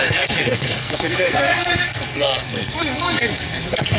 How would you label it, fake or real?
fake